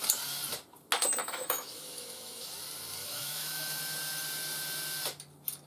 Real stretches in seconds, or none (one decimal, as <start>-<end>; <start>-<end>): 0.0-1.2; 2.5-3.0; 3.8-5.7